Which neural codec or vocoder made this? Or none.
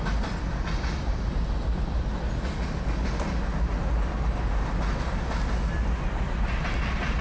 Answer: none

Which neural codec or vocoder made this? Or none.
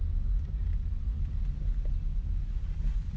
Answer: none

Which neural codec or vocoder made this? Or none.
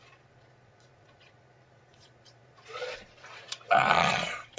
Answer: vocoder, Vocos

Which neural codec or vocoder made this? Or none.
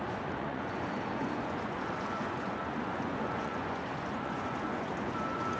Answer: vocoder, Vocos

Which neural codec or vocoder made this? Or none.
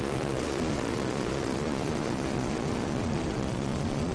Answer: vocoder, Vocos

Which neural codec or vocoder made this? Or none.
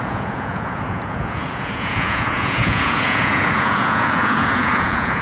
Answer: vocoder, Vocos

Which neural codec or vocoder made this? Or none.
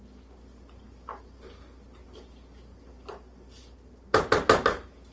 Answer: none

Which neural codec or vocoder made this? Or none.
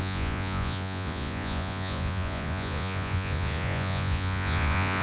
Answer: vocoder, Vocos